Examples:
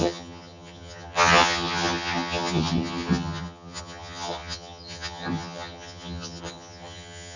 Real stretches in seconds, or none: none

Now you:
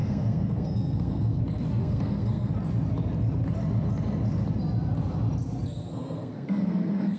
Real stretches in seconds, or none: 1.4-1.8; 2.5-5.9

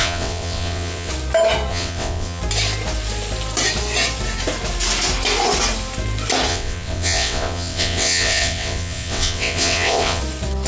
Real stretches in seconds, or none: 1.1-1.7; 2.4-6.5; 10.2-10.7

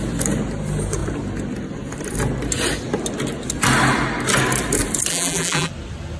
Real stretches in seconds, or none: 0.0-5.1; 5.7-6.2

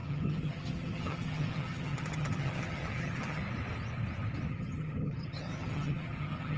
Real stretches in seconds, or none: 3.4-4.5

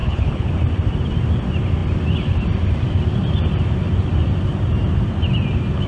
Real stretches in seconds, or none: 0.5-5.9

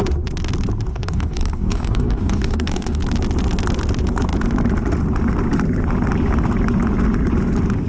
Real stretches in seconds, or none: 0.0-0.9; 3.0-7.9